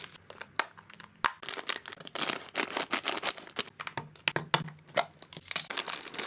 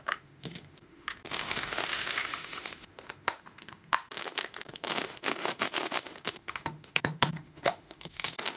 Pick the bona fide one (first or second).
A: first